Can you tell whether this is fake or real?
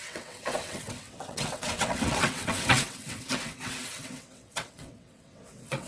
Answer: fake